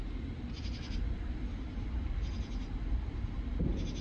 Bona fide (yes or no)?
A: yes